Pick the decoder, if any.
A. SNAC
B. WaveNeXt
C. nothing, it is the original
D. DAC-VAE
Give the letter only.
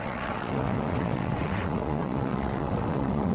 B